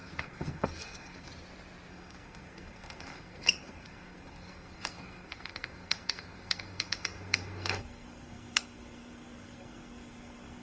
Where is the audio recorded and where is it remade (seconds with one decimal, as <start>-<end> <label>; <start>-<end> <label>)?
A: 0.0-1.3 remade; 1.3-1.9 recorded; 1.9-10.6 remade